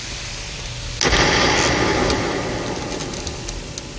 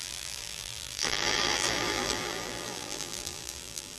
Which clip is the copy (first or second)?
second